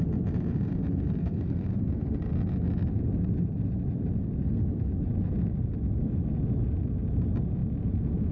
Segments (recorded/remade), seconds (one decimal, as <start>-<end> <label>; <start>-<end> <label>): 0.0-1.2 recorded; 1.2-1.9 remade; 1.9-8.3 recorded